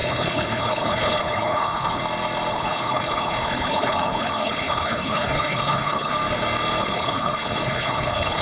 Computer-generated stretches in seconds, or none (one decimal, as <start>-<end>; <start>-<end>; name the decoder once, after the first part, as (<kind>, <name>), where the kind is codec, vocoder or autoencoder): 0.0-2.0 (codec, HILCodec); 2.5-6.1; 6.8-8.4